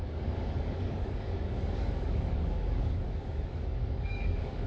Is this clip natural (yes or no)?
no